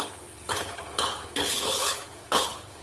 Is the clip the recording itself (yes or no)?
no